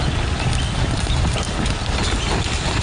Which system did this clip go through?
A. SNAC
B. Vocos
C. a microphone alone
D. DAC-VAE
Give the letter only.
C